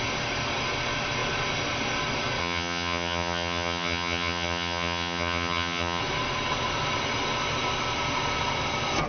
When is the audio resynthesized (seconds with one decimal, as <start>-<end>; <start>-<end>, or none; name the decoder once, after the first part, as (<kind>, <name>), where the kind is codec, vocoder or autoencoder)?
2.4-6.0 (vocoder, HiFi-GAN)